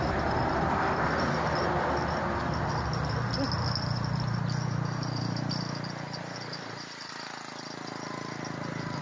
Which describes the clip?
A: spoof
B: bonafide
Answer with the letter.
B